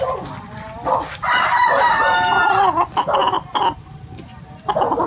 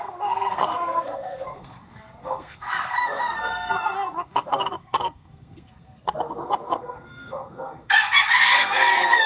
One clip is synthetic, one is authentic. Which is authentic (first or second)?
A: first